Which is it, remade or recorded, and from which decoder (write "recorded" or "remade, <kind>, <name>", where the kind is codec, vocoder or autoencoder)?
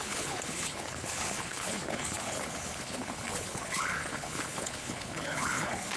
remade, codec, HILCodec